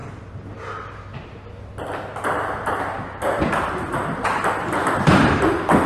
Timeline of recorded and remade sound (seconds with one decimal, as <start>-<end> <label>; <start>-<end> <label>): 0.0-3.1 recorded; 3.1-3.8 remade; 3.8-4.8 recorded; 4.8-5.4 remade; 5.4-5.9 recorded